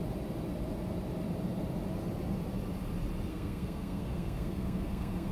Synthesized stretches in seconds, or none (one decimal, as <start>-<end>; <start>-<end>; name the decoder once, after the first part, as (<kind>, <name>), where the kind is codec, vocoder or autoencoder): 3.3-5.3 (codec, SNAC)